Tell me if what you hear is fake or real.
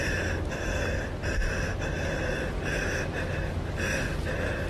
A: real